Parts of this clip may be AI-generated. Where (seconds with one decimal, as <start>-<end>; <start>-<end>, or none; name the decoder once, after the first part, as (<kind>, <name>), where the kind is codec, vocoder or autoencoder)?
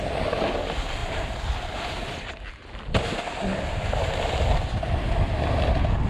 1.0-2.0 (vocoder, BigVGAN v2)